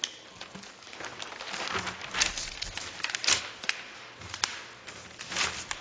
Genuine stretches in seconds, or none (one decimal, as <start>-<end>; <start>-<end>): 0.0-5.8